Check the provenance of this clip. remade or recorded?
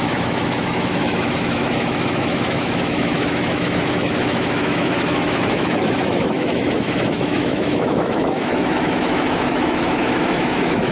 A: remade